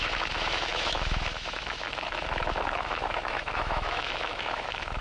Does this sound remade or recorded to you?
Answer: remade